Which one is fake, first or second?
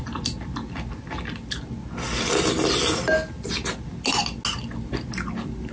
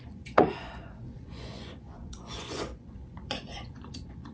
second